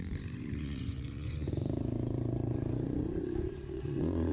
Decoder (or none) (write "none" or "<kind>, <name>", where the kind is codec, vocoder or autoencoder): vocoder, Vocos